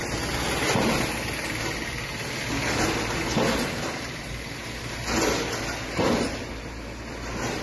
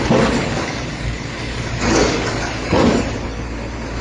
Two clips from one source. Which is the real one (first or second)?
first